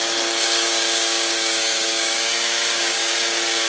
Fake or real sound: fake